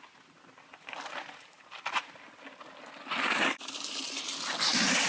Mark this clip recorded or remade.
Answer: recorded